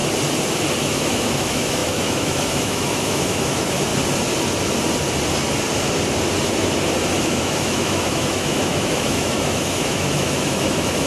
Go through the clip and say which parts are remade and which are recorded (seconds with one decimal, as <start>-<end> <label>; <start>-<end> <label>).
0.0-0.8 recorded; 0.8-3.9 remade; 3.9-7.2 recorded; 7.2-11.1 remade